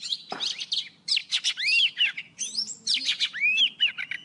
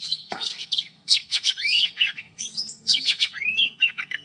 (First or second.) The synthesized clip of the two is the second